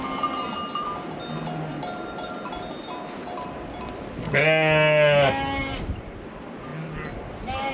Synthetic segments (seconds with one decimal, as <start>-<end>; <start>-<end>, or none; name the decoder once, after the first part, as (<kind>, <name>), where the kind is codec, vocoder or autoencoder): none